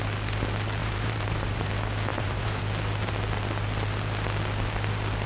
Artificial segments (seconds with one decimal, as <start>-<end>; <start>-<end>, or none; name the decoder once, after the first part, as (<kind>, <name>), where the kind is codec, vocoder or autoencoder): 0.8-1.7 (vocoder, BigVGAN v2); 2.1-2.6